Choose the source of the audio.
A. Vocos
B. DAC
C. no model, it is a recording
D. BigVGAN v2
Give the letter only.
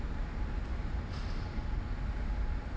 C